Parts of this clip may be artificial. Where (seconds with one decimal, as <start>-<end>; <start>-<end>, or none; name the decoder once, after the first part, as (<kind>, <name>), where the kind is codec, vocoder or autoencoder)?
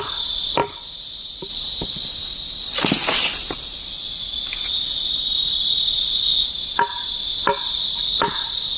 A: 0.0-0.6 (vocoder, BigVGAN v2); 1.5-6.3; 7.6-8.8